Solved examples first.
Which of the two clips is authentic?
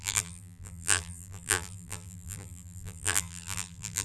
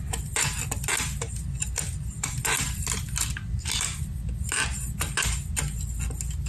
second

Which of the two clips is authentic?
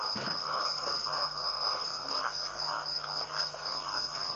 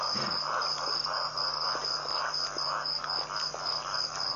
second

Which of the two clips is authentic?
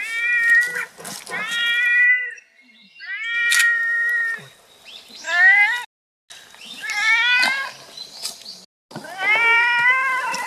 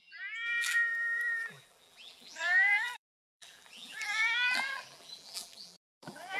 first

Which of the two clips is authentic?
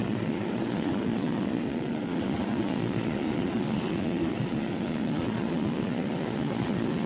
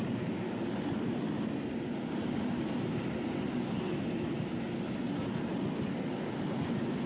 second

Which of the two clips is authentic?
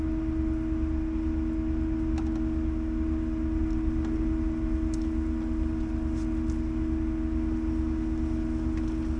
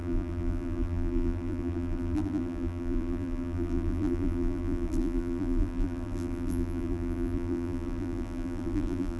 first